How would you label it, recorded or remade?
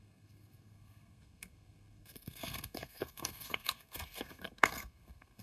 remade